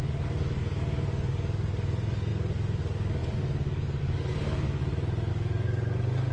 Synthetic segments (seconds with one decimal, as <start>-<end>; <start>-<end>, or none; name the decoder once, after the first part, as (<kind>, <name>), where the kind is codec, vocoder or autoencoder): 0.0-4.8 (codec, DAC); 5.3-6.3